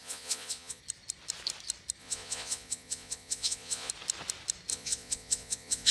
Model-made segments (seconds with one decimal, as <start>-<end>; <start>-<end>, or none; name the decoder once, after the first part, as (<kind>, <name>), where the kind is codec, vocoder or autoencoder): 0.0-0.8 (vocoder, Vocos); 2.0-3.9; 4.7-5.9